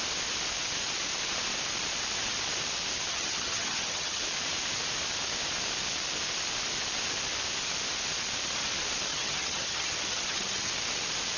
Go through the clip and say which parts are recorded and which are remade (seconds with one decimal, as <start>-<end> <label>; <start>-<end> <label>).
0.0-3.1 recorded; 3.1-4.2 remade; 4.2-9.1 recorded; 9.1-10.7 remade; 10.7-11.4 recorded